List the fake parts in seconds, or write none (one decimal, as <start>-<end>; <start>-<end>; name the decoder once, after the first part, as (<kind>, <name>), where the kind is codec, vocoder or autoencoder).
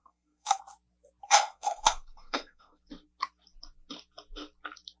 0.0-0.6 (codec, SNAC); 1.2-2.8